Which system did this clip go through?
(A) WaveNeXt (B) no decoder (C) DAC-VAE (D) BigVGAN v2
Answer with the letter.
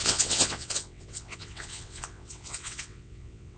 A